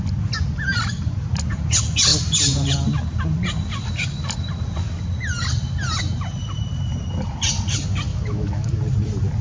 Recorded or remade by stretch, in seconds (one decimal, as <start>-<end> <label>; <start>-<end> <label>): 0.0-8.1 recorded; 8.1-8.8 remade; 8.8-9.4 recorded